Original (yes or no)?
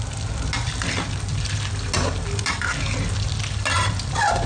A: yes